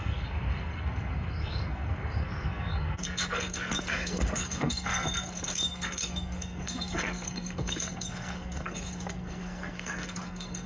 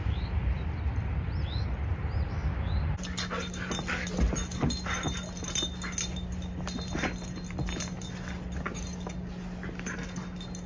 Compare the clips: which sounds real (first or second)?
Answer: second